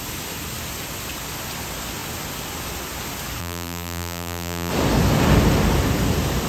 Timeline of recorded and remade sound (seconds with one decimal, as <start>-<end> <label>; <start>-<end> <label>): 0.0-3.4 recorded; 3.4-4.7 remade; 4.7-6.5 recorded